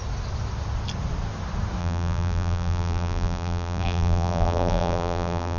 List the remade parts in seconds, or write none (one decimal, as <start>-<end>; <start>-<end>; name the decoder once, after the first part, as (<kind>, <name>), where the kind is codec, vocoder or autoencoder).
1.8-5.6 (vocoder, BigVGAN v2)